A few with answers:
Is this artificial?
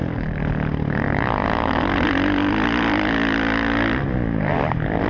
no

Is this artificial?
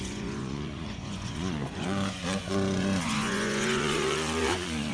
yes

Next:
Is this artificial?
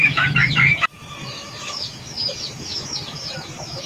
yes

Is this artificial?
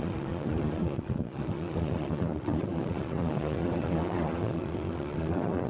yes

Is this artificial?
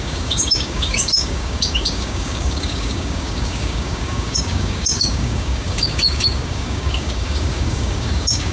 yes